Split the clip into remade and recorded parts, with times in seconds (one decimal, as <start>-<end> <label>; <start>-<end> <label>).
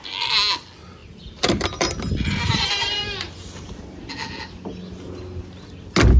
0.0-1.0 recorded; 1.0-4.1 remade; 4.1-6.2 recorded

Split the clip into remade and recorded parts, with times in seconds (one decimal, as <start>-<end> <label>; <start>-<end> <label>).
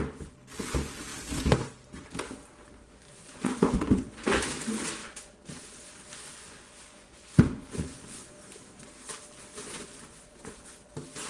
0.0-2.8 recorded; 2.8-4.4 remade; 4.4-5.0 recorded; 5.0-8.3 remade; 8.3-9.5 recorded; 9.5-10.9 remade; 10.9-11.3 recorded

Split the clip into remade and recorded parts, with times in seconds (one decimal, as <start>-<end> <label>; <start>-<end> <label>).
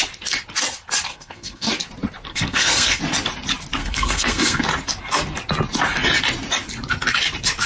0.0-1.1 recorded; 1.1-1.7 remade; 1.7-2.3 recorded; 2.3-3.0 remade; 3.0-3.8 recorded; 3.8-4.6 remade; 4.6-7.7 recorded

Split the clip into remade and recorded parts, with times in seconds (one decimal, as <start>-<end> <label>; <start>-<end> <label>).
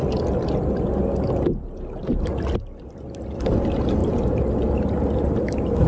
0.0-5.9 recorded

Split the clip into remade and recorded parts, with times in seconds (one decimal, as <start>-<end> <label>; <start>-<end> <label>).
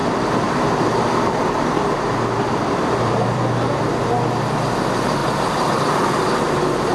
0.0-4.1 remade; 4.1-5.2 recorded; 5.2-5.8 remade; 5.8-6.9 recorded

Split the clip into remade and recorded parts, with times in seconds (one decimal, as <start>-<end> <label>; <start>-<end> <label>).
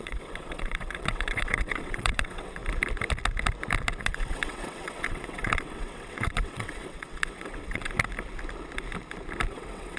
0.0-2.6 remade; 2.6-4.0 recorded; 4.0-7.8 remade; 7.8-9.5 recorded; 9.5-10.0 remade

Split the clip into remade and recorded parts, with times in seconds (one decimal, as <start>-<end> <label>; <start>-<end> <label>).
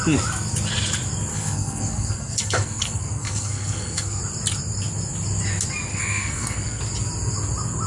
0.0-1.3 recorded; 1.3-4.2 remade; 4.2-5.9 recorded; 5.9-6.8 remade; 6.8-7.9 recorded